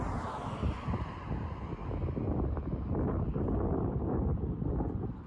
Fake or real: real